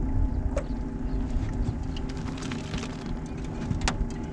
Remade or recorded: recorded